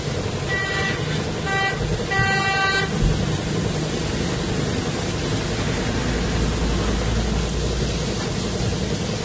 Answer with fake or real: real